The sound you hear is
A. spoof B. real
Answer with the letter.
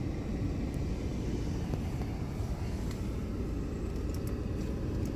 B